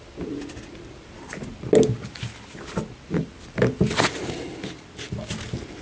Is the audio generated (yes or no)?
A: no